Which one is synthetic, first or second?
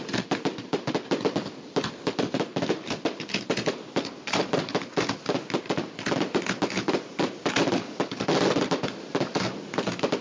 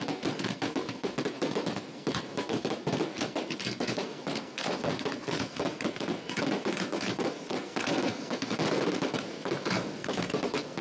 second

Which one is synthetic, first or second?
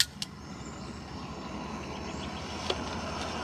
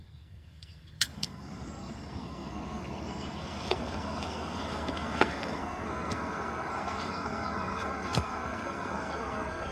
second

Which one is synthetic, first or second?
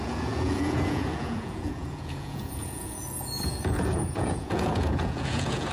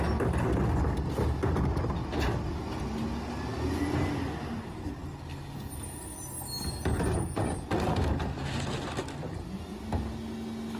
first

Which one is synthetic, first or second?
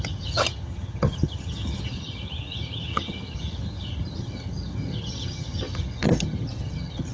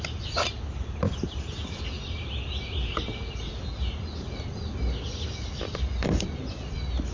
first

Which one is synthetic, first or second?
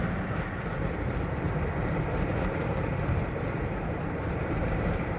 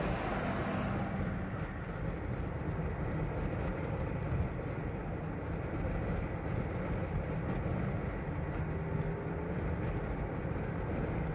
first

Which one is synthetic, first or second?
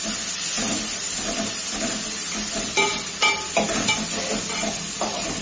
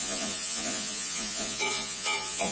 second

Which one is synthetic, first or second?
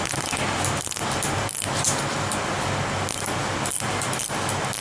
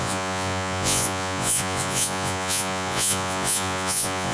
second